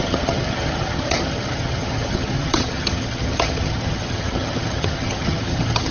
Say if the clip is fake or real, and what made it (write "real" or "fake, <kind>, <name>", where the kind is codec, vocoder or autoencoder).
fake, vocoder, HiFi-GAN